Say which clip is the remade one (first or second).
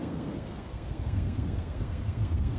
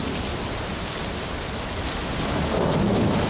first